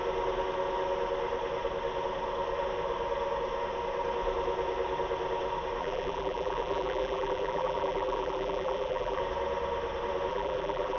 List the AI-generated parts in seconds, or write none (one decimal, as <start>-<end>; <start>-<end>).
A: 5.8-9.2; 10.3-11.0